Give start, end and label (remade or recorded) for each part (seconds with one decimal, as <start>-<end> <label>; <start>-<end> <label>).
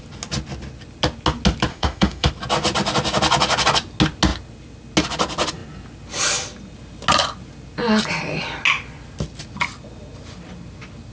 0.0-1.7 recorded; 1.7-2.3 remade; 2.3-11.1 recorded